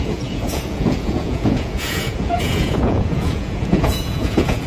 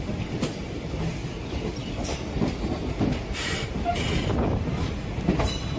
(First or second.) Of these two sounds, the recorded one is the second